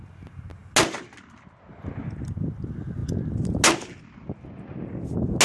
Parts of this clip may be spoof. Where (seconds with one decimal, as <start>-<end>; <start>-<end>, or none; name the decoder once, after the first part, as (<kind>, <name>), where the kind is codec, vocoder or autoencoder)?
none